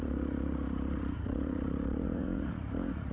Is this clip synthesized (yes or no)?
yes